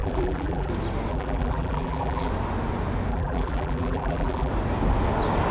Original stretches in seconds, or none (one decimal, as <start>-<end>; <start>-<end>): 0.7-1.1; 2.3-3.1; 4.5-5.5